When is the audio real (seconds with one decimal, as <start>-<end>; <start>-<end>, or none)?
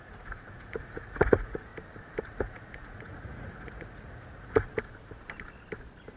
1.7-2.2; 4.7-6.2